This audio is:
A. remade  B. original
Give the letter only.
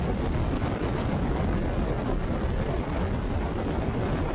B